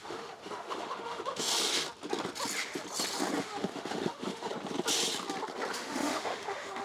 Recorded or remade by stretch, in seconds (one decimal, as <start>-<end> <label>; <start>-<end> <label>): 0.0-1.5 remade; 1.5-3.4 recorded; 3.4-4.5 remade; 4.5-5.7 recorded; 5.7-6.8 remade